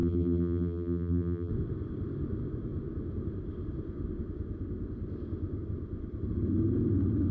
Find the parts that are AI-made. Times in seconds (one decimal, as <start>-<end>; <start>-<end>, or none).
0.0-1.5

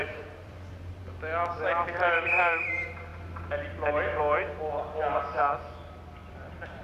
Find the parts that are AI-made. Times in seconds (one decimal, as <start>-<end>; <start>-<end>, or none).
0.0-2.7; 6.2-6.8

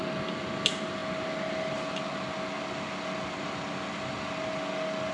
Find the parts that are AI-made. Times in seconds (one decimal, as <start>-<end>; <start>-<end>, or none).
none

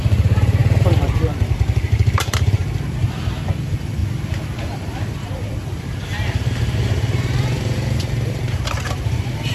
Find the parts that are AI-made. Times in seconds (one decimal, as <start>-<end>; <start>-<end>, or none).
0.0-2.6; 3.6-4.0; 4.6-9.5

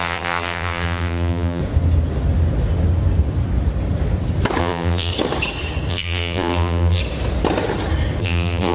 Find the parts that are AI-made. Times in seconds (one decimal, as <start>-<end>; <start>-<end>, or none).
0.0-1.6; 4.6-5.1; 5.9-7.0; 8.2-8.7

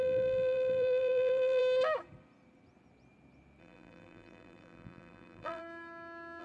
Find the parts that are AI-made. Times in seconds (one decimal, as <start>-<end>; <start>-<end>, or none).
0.0-1.6; 3.6-5.6

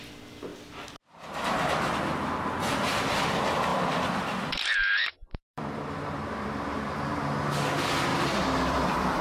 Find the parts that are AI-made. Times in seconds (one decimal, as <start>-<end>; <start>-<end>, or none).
3.7-7.1; 8.1-9.2